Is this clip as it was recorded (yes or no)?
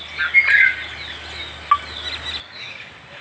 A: yes